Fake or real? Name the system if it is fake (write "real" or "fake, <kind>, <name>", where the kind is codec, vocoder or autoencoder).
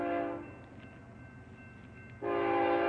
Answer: real